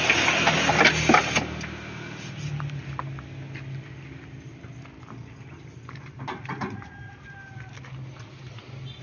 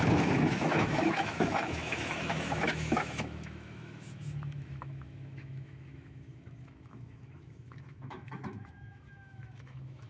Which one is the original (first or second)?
first